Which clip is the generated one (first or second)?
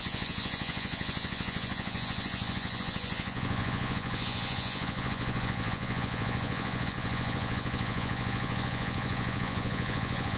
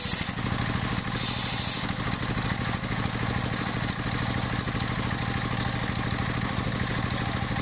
first